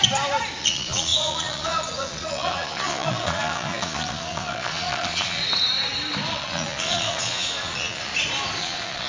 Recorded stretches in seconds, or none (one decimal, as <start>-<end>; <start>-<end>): 0.0-0.6; 5.4-6.3; 8.1-8.6